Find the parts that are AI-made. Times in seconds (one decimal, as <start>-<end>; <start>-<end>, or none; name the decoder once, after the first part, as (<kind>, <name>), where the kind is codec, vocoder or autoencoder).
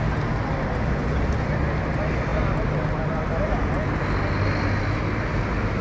none